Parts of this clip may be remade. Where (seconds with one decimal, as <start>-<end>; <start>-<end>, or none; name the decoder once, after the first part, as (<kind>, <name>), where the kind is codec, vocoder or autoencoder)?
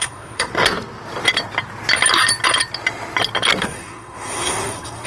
0.0-0.5 (codec, SNAC); 3.6-5.1